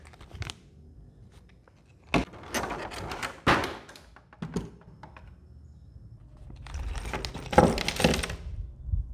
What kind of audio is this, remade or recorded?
recorded